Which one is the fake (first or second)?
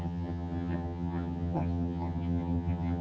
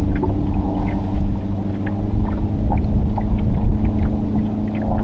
first